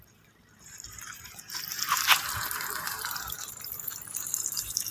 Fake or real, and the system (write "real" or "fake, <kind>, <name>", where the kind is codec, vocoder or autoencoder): fake, vocoder, BigVGAN v2